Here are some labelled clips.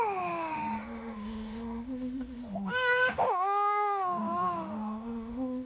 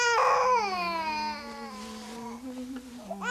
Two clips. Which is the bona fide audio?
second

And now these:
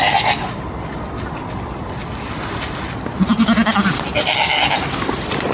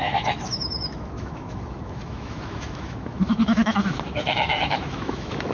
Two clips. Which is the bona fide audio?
first